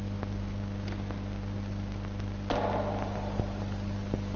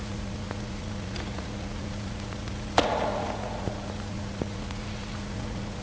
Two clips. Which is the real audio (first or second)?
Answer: first